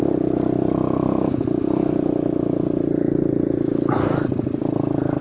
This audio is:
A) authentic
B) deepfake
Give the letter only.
A